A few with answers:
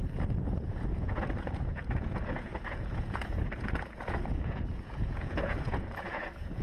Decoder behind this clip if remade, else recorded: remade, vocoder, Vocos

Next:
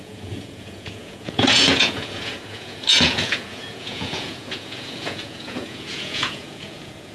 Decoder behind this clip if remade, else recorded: remade, vocoder, Vocos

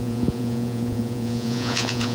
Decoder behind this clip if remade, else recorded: remade, vocoder, Vocos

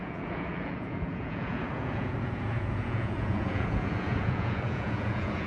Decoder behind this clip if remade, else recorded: remade, vocoder, Vocos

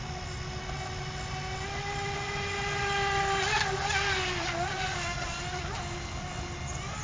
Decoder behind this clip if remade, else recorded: recorded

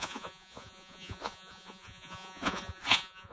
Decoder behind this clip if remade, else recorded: remade, vocoder, Vocos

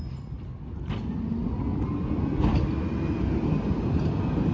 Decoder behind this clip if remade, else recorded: recorded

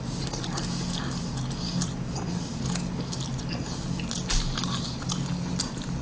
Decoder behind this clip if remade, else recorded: recorded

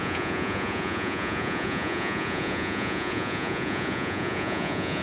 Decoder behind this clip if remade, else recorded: remade, vocoder, Vocos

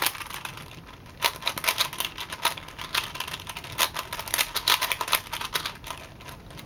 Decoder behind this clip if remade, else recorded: recorded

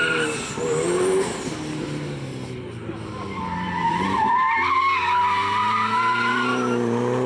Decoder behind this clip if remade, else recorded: recorded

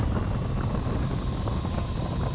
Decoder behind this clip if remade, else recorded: recorded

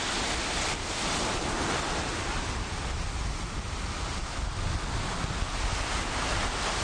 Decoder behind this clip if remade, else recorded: recorded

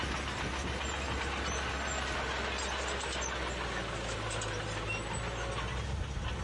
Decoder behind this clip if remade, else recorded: recorded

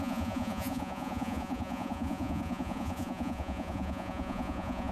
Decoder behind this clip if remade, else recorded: remade, vocoder, Vocos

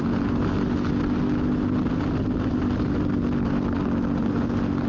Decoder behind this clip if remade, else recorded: recorded